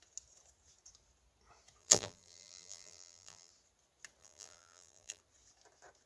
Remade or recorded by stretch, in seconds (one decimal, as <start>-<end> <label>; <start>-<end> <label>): 0.0-1.8 recorded; 1.8-3.5 remade; 3.5-4.2 recorded; 4.2-5.2 remade; 5.2-6.1 recorded